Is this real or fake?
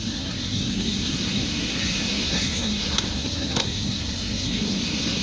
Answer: fake